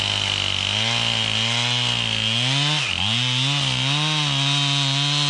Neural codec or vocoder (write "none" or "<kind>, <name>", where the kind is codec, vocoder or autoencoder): none